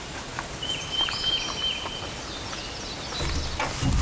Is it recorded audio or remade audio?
recorded